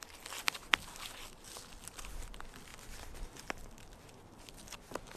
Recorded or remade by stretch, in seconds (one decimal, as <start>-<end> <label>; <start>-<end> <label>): 0.0-2.7 recorded; 2.7-4.5 remade; 4.5-5.2 recorded